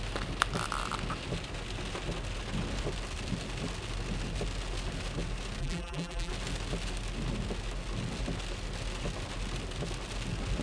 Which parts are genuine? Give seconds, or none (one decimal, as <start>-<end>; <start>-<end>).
0.0-5.6; 6.3-10.6